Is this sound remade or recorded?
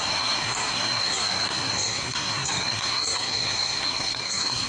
remade